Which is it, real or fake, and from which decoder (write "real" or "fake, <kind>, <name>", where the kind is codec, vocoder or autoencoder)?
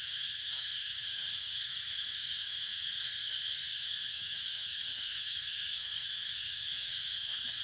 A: fake, codec, SNAC